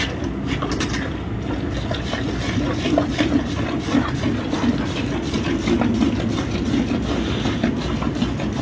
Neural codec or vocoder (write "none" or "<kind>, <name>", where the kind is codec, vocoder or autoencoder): none